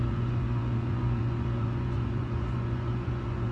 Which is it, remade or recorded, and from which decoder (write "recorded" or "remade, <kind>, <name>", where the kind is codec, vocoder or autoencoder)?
remade, vocoder, Vocos